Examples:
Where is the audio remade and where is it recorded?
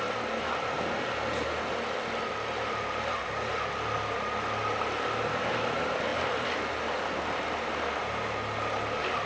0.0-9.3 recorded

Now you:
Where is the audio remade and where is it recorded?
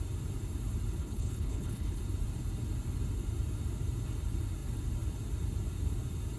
0.0-1.0 recorded; 1.0-2.0 remade; 2.0-6.4 recorded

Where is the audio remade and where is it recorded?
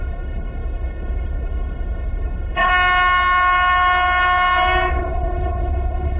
0.0-2.7 remade; 2.7-4.9 recorded; 4.9-6.2 remade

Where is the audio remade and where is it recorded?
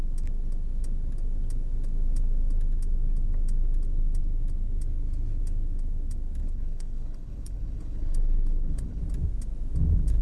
0.0-6.4 recorded; 6.4-9.0 remade; 9.0-10.2 recorded